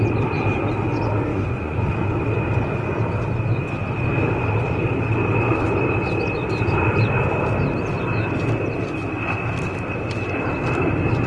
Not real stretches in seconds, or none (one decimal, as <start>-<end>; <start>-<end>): 1.3-2.1